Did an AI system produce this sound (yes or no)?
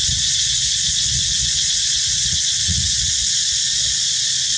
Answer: yes